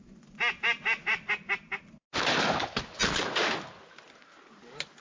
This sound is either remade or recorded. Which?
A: recorded